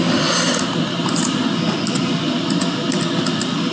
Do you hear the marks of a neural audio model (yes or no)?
no